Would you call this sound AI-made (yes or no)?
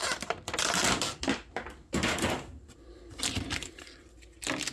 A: no